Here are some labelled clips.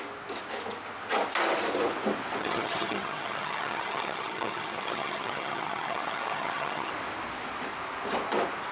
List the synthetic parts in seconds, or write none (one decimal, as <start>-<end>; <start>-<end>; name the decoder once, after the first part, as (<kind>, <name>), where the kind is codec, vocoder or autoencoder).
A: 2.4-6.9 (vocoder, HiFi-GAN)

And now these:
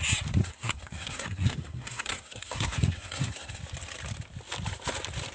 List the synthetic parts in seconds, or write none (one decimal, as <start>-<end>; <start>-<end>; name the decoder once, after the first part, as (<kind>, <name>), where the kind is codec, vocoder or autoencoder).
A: 0.4-3.6 (codec, SNAC)

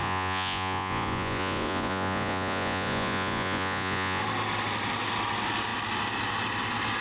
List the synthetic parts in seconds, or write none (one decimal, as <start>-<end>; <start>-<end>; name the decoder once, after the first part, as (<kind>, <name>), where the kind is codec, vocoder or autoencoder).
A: 0.0-4.2 (vocoder, Vocos)